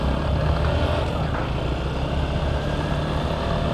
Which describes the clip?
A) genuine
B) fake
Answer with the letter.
A